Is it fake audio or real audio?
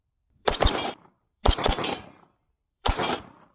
fake